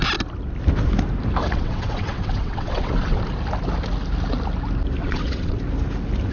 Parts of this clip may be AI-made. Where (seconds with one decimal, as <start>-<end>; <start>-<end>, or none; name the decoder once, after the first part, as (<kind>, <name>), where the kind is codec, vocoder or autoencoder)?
1.4-3.2 (vocoder, WaveNeXt); 5.0-5.6